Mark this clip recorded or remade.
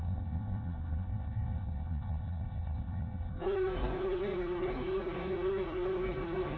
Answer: remade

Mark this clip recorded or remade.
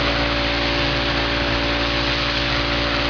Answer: recorded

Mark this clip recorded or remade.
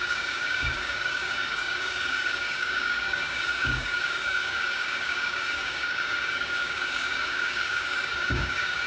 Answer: remade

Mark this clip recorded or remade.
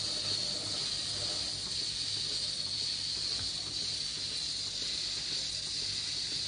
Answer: recorded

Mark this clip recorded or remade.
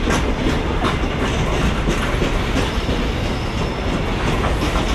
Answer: recorded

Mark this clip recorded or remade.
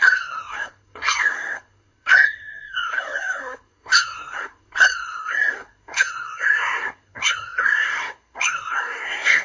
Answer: remade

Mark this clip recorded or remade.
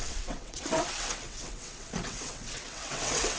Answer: remade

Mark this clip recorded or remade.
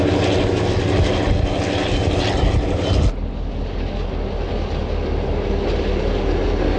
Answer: recorded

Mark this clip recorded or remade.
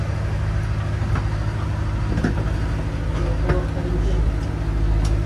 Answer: recorded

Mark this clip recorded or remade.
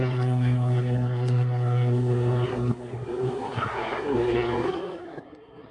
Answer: remade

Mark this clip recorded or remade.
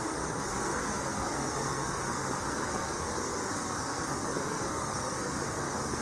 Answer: remade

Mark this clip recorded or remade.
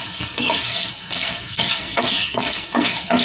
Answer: remade